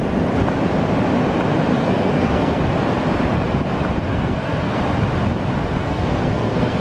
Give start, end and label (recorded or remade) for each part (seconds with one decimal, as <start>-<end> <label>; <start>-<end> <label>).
0.0-1.7 recorded; 1.7-2.6 remade; 2.6-4.1 recorded; 4.1-4.8 remade; 4.8-5.8 recorded; 5.8-6.8 remade